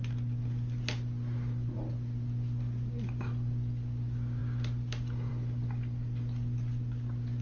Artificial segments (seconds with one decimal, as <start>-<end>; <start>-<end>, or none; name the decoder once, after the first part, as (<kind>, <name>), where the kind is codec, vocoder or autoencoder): none